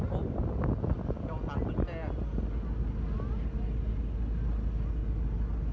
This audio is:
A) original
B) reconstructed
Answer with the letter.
A